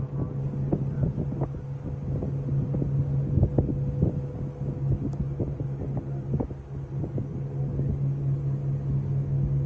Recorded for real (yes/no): yes